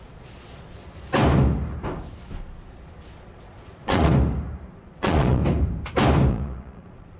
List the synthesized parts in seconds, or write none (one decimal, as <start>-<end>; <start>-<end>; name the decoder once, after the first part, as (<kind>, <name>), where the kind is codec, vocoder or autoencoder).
0.0-0.8 (vocoder, Vocos); 3.1-4.1; 4.7-5.4; 6.3-7.2